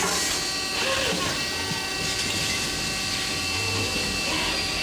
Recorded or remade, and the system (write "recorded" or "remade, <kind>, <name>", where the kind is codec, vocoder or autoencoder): recorded